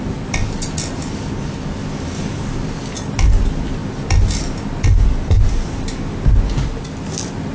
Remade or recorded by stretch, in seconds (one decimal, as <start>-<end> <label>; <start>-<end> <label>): 0.0-7.5 recorded